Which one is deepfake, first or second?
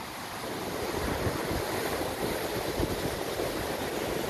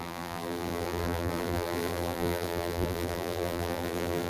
second